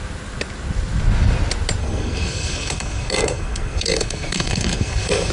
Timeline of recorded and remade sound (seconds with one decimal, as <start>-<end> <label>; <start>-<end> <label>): 0.0-1.8 recorded; 1.8-5.3 remade